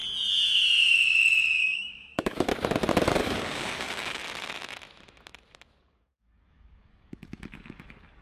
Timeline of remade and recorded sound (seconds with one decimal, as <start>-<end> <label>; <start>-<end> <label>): 0.0-1.6 recorded; 1.6-2.5 remade; 2.5-3.0 recorded; 3.0-4.2 remade; 4.2-5.8 recorded; 5.8-8.2 remade